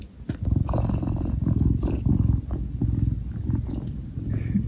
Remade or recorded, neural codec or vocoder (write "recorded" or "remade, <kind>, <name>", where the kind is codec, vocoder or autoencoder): remade, vocoder, BigVGAN v2